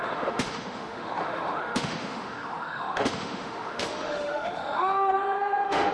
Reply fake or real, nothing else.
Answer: fake